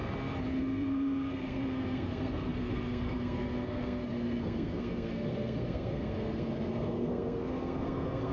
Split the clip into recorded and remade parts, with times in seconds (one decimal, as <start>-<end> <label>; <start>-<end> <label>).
0.0-0.6 recorded; 0.6-8.3 remade